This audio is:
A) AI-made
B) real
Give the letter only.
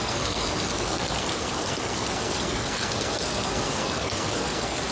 A